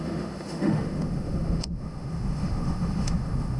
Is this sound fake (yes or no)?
yes